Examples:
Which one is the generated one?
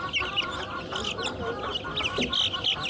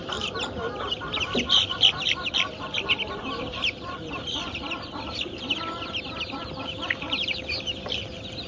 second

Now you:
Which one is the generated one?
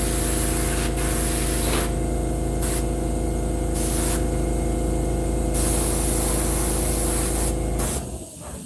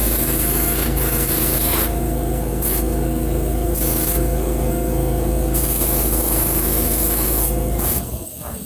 second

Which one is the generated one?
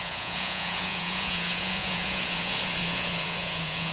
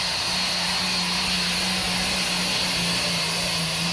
first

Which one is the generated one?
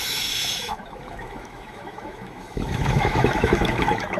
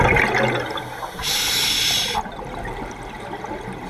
first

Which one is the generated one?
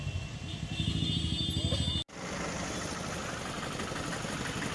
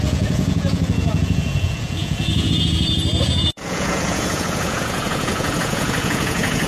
second